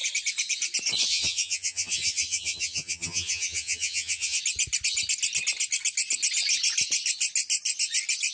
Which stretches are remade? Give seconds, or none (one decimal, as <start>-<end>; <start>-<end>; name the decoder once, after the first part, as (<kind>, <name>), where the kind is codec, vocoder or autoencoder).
1.1-4.4 (vocoder, HiFi-GAN)